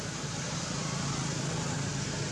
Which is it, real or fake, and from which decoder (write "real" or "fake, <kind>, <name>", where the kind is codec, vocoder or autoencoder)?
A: real